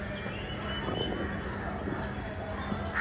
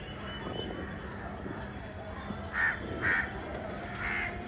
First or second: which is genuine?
first